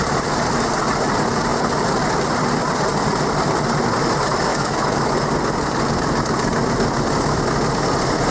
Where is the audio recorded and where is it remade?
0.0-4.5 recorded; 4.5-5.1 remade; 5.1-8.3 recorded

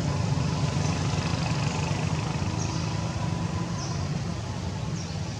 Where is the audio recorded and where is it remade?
0.0-5.4 recorded

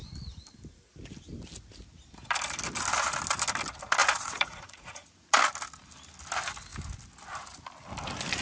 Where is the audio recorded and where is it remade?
0.0-4.0 recorded; 4.0-5.4 remade; 5.4-8.4 recorded